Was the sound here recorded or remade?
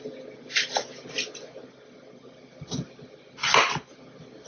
recorded